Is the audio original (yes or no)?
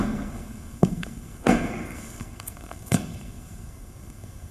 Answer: no